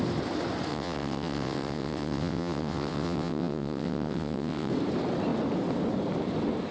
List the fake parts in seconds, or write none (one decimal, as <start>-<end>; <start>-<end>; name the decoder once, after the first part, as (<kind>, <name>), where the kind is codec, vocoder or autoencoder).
0.7-4.7 (vocoder, WaveNeXt)